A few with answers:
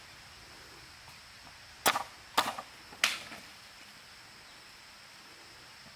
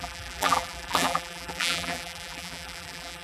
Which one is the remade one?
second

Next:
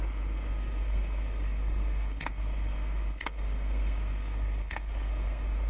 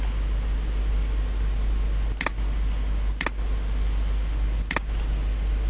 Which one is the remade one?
first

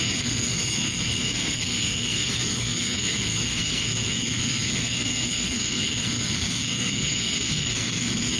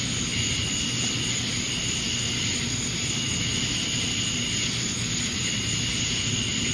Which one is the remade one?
first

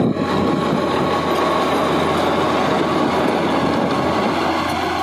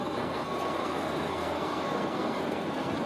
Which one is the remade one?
second